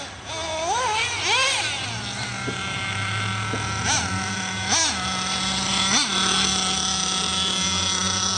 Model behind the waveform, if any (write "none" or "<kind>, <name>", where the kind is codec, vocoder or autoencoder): none